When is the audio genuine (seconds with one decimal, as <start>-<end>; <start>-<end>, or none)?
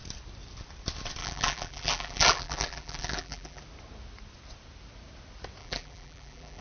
0.0-1.2; 3.6-5.6